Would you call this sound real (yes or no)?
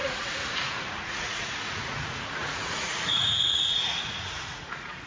no